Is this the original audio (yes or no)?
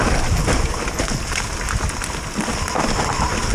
yes